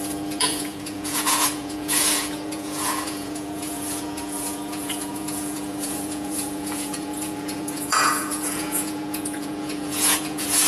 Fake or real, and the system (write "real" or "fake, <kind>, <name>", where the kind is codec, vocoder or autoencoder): fake, vocoder, Vocos